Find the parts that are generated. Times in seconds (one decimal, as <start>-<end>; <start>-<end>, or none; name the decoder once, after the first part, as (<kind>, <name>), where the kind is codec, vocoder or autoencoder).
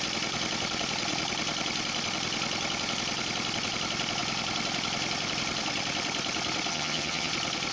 6.7-7.3 (vocoder, HiFi-GAN)